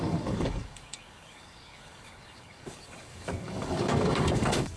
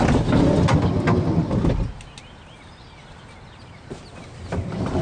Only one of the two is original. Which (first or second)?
second